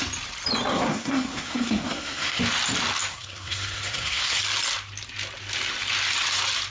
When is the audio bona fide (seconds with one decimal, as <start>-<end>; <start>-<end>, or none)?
0.0-0.7; 2.4-3.1; 4.4-6.7